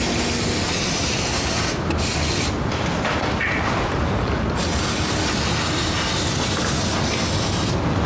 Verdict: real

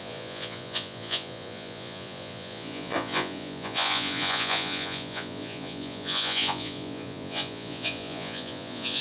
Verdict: fake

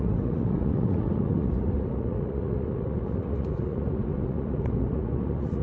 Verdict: fake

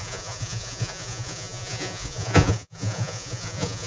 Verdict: fake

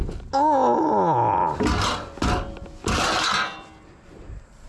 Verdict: real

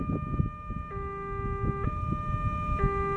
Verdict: real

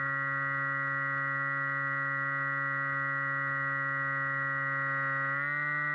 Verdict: real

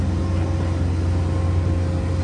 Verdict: real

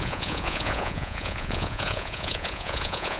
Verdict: fake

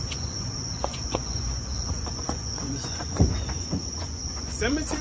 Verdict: fake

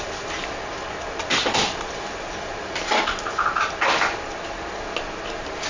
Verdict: real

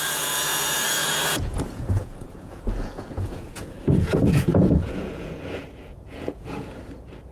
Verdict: fake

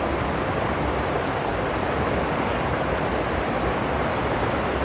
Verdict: real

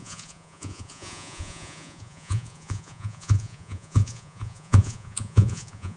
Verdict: fake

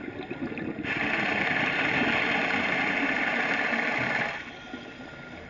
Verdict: real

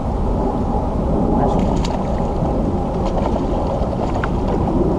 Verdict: real